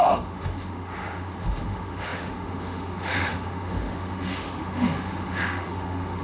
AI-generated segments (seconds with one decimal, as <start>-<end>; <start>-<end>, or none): 0.0-6.2